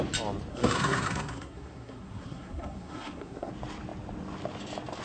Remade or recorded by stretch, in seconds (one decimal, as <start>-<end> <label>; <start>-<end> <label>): 0.0-0.5 recorded; 0.5-3.5 remade; 3.5-5.0 recorded